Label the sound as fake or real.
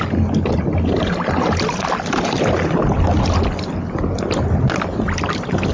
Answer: real